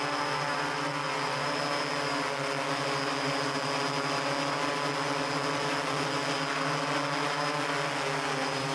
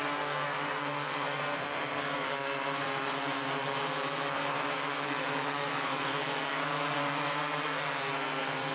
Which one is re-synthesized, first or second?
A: second